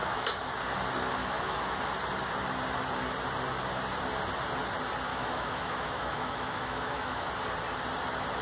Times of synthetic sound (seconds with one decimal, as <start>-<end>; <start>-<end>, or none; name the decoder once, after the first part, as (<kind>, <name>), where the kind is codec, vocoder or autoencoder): 0.0-0.5 (autoencoder, DAC-VAE); 1.2-1.8; 5.1-7.3